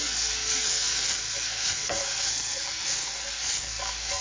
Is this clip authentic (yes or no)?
no